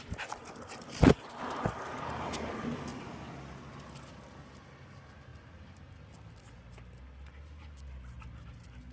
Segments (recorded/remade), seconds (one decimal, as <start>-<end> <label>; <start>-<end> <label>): 0.0-8.9 recorded